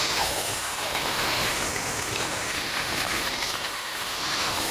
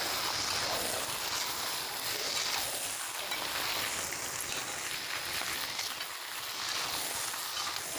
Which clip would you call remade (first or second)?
first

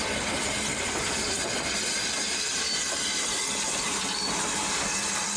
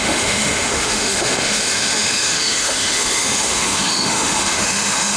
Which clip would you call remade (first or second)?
second